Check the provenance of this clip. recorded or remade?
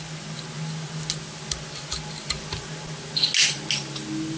recorded